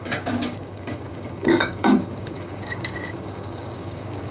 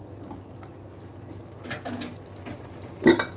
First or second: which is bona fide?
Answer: second